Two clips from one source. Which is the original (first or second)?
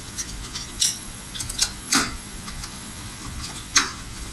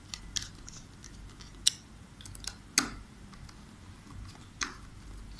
second